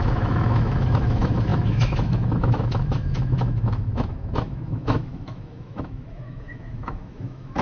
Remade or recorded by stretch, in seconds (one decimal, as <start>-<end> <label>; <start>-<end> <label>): 0.0-7.6 remade

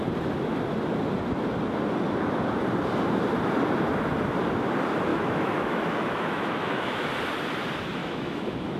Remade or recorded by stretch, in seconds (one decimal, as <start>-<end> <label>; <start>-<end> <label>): 0.0-5.1 recorded; 5.1-7.1 remade; 7.1-8.0 recorded; 8.0-8.8 remade